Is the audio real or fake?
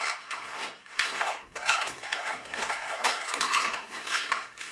fake